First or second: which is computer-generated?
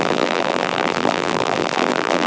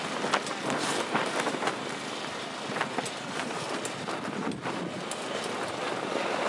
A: first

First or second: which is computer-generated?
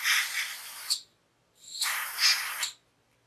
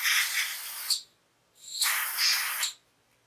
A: first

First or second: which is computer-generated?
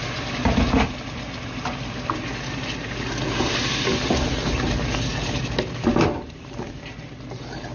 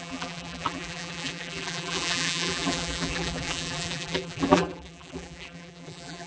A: second